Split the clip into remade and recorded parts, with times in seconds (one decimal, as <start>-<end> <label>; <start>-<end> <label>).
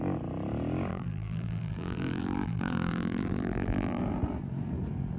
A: 0.0-0.9 recorded; 0.9-4.0 remade; 4.0-5.2 recorded